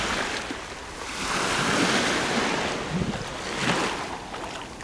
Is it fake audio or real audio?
real